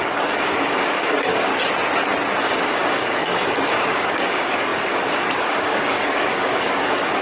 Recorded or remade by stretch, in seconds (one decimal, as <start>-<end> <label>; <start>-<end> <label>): 0.0-1.5 remade; 1.5-2.4 recorded; 2.4-7.2 remade